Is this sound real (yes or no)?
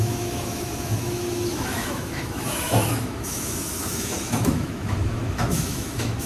no